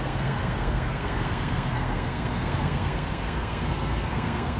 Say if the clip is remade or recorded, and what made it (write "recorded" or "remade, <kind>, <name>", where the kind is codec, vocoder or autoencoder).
remade, codec, SNAC